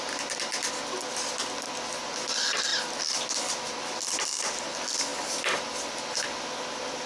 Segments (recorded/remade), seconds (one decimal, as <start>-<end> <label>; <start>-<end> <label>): 0.0-7.1 recorded